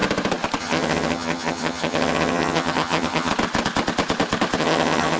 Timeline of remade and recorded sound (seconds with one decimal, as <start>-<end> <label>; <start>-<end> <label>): 0.0-0.6 recorded; 0.6-3.3 remade; 3.3-4.6 recorded; 4.6-5.2 remade